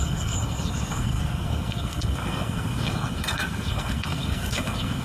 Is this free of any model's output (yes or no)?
no